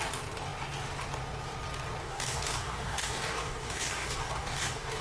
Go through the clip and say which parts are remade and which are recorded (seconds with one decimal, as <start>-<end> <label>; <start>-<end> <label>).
0.0-2.0 recorded; 2.0-5.0 remade